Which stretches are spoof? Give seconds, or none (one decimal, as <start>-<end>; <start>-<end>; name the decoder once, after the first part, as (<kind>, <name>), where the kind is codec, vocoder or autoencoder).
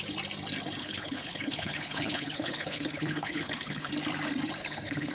0.8-3.9 (codec, HILCodec); 4.6-5.1